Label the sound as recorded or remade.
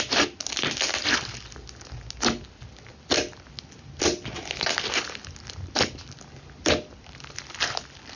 recorded